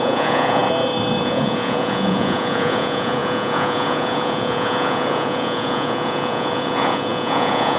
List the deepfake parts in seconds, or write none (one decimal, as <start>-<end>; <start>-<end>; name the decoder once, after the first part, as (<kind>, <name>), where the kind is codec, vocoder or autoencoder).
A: 0.0-0.6 (vocoder, Vocos); 1.2-7.8